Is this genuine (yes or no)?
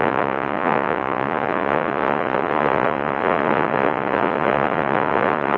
no